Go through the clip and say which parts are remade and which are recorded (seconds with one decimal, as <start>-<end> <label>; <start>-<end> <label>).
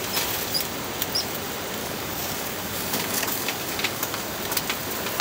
0.0-1.8 recorded; 1.8-4.4 remade; 4.4-5.2 recorded